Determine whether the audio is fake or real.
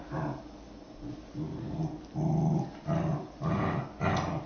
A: real